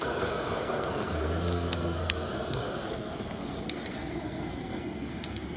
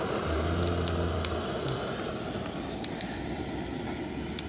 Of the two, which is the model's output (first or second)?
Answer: first